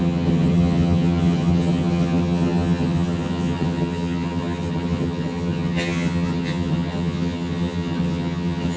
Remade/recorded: remade